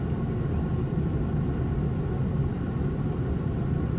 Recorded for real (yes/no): yes